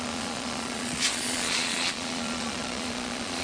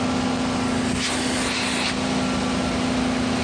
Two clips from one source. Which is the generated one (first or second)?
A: first